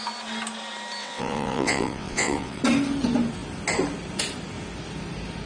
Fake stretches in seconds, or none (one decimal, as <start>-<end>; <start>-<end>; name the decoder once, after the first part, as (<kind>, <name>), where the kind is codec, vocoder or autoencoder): 1.0-2.6 (vocoder, WaveNeXt)